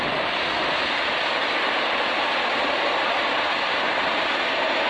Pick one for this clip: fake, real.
real